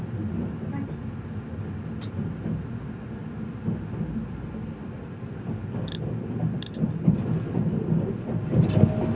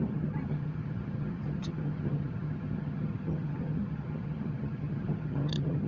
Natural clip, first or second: first